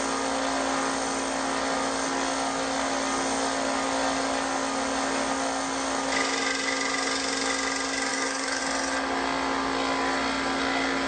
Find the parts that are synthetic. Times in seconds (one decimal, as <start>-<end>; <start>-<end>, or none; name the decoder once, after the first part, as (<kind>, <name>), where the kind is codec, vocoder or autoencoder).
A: 8.1-8.6 (codec, DAC)